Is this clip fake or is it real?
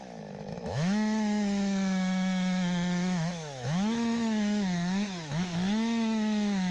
fake